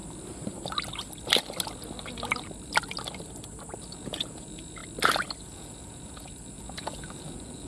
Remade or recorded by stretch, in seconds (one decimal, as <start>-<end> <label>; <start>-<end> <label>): 0.0-3.9 recorded; 3.9-4.8 remade; 4.8-5.4 recorded; 5.4-7.7 remade